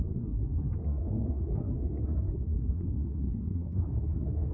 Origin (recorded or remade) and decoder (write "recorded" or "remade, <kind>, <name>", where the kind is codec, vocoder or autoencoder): remade, codec, SNAC